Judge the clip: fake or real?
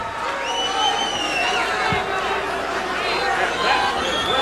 real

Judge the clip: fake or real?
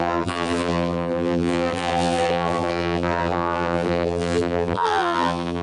fake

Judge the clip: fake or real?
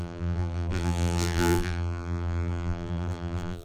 fake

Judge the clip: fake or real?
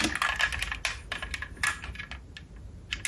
real